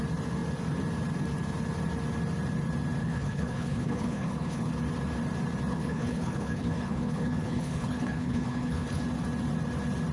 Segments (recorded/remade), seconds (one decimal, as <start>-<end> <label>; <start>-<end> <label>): 0.0-3.0 recorded; 3.0-4.7 remade; 4.7-5.7 recorded; 5.7-9.0 remade; 9.0-10.1 recorded

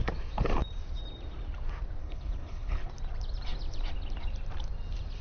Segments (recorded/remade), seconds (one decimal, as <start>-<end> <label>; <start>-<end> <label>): 0.0-2.0 recorded; 2.0-2.9 remade; 2.9-5.2 recorded

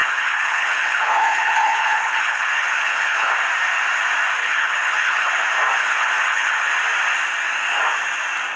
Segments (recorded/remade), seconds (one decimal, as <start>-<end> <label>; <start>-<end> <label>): 0.0-3.3 remade; 3.3-4.4 recorded; 4.4-5.3 remade; 5.3-5.8 recorded; 5.8-6.7 remade; 6.7-8.6 recorded

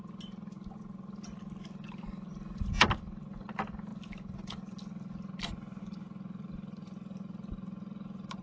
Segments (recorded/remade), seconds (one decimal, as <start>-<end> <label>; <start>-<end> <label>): 0.0-8.4 recorded

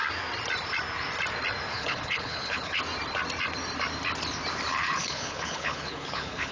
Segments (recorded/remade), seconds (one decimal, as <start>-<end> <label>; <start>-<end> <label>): 0.0-1.7 recorded; 1.7-2.8 remade; 2.8-4.7 recorded; 4.7-6.5 remade

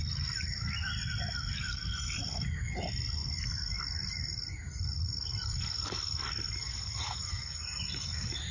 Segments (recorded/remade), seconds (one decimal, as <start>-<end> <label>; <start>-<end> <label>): 0.0-8.5 recorded